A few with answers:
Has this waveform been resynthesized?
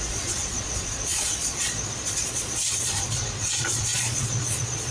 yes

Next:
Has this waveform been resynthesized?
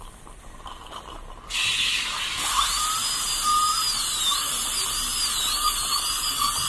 no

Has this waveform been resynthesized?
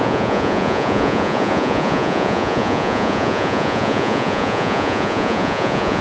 yes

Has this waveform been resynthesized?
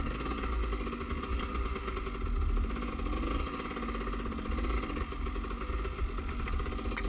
no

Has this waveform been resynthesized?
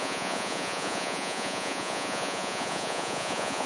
yes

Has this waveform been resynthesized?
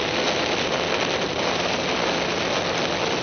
no